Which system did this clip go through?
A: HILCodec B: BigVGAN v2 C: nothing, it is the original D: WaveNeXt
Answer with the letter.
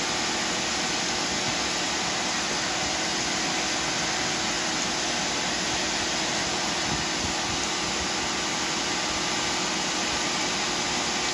C